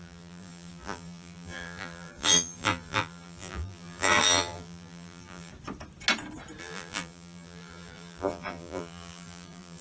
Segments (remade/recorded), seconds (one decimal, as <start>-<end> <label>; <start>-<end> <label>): 0.0-5.5 remade; 5.5-6.6 recorded; 6.6-9.8 remade